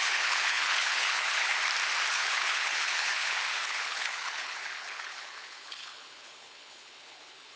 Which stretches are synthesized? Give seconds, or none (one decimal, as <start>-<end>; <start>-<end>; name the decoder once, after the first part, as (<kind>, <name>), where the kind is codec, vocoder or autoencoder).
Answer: 0.0-1.5 (codec, HILCodec); 2.1-7.6